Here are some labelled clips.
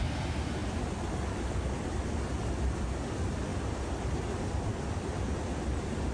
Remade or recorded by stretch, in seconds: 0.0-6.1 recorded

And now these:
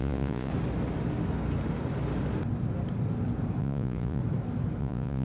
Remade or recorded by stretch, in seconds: 0.0-0.5 remade; 0.5-3.6 recorded; 3.6-4.2 remade; 4.2-4.8 recorded; 4.8-5.2 remade

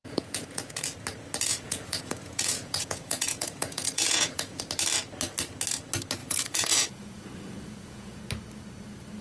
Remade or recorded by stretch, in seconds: 0.0-0.7 remade; 0.7-1.5 recorded; 1.5-4.6 remade; 4.6-6.2 recorded; 6.2-8.2 remade; 8.2-9.2 recorded

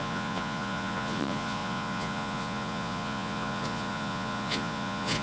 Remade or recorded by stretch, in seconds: 0.0-5.2 remade

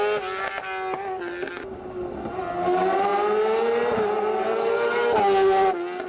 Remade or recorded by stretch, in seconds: 0.0-6.1 recorded

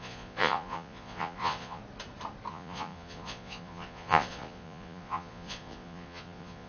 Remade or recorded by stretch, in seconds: 0.0-1.8 remade; 1.8-2.5 recorded; 2.5-6.7 remade

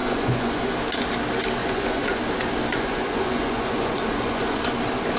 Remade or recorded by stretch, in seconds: 0.0-0.6 remade; 0.6-1.6 recorded; 1.6-2.2 remade; 2.2-2.7 recorded; 2.7-4.6 remade; 4.6-5.2 recorded

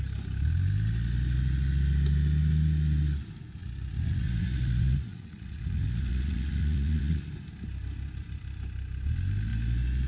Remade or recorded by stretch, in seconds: 0.0-3.6 recorded; 3.6-7.3 remade; 7.3-10.1 recorded